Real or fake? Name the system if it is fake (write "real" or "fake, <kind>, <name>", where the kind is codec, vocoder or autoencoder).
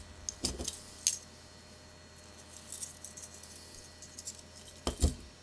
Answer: real